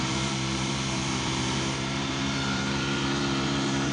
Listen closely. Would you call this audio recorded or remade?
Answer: remade